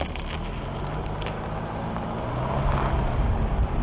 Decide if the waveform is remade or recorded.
recorded